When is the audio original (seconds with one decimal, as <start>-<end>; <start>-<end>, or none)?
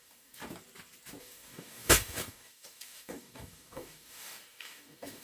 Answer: 0.4-1.2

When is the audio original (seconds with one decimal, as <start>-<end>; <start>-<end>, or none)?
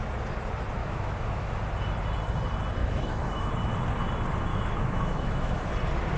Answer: 0.0-0.8; 1.6-2.8; 3.5-4.5; 5.7-6.2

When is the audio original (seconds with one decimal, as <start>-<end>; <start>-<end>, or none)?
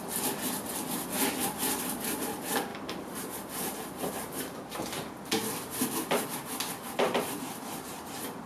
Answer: 0.0-2.7; 4.6-8.5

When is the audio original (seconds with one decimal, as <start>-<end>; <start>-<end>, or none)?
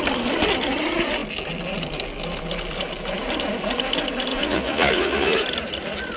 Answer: 0.0-4.3; 5.4-6.2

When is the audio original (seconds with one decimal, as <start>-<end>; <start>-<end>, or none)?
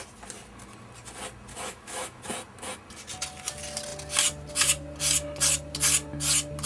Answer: 0.0-1.5; 2.2-6.7